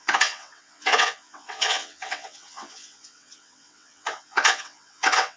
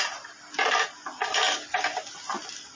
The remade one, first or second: first